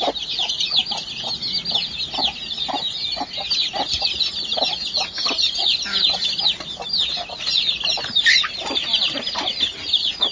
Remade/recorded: recorded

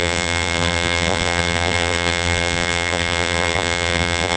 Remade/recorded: remade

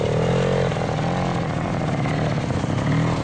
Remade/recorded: recorded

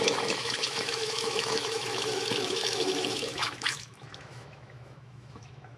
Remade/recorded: remade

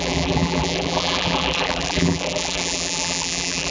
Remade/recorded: remade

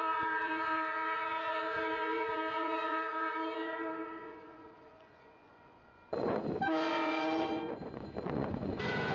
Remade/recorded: remade